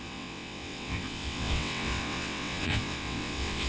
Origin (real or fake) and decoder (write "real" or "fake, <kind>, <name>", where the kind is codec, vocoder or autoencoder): fake, vocoder, WaveNeXt